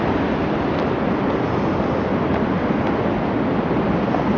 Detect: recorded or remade recorded